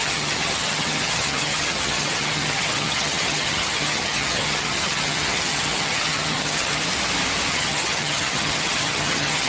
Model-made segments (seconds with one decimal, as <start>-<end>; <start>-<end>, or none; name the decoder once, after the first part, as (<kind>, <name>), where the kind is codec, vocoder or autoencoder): 0.0-6.8 (vocoder, HiFi-GAN); 7.5-9.5